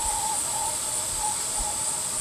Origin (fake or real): real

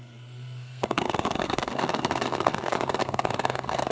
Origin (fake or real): fake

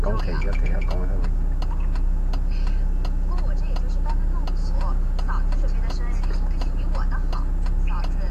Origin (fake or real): real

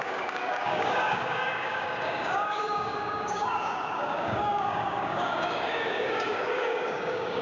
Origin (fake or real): fake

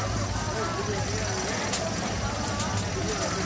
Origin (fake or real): real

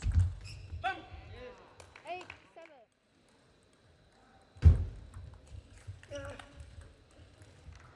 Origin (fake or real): real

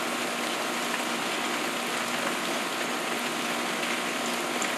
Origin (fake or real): real